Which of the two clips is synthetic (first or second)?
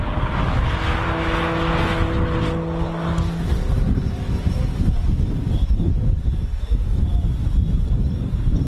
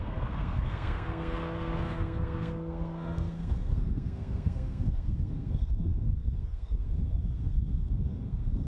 second